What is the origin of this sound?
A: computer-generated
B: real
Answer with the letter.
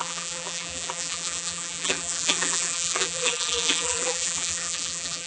A